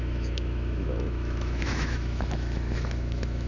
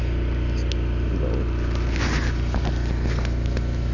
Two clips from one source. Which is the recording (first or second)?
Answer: second